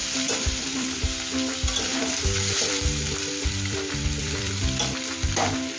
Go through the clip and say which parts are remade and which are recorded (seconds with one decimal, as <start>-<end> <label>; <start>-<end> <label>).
0.0-1.0 remade; 1.0-1.9 recorded; 1.9-4.6 remade; 4.6-5.8 recorded